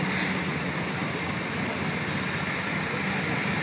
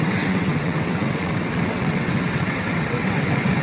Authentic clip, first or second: first